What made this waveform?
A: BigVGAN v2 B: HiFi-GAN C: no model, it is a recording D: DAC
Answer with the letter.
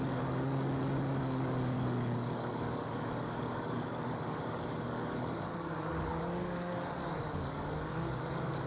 D